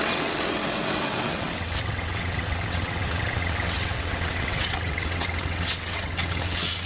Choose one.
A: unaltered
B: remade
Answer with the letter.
B